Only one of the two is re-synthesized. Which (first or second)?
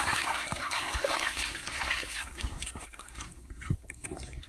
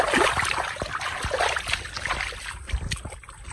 first